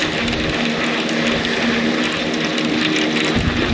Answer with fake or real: real